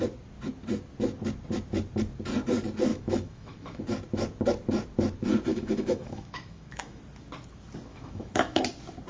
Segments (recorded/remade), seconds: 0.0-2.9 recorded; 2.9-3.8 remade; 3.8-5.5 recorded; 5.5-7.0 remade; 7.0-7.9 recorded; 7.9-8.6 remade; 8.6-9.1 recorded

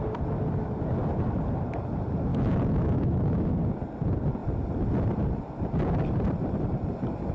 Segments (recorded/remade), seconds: 0.0-2.3 recorded; 2.3-3.5 remade; 3.5-7.3 recorded

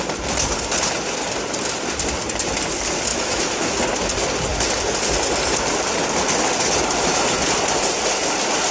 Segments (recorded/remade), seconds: 0.0-3.1 recorded; 3.1-3.8 remade; 3.8-8.7 recorded

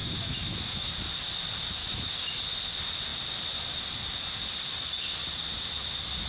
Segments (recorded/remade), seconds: 0.0-0.9 remade; 0.9-1.8 recorded; 1.8-2.4 remade; 2.4-6.3 recorded

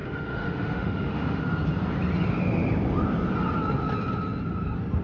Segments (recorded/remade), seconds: 0.0-1.4 remade; 1.4-5.0 recorded

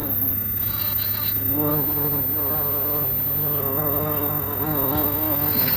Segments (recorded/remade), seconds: 0.0-1.7 remade; 1.7-3.6 recorded; 3.6-5.8 remade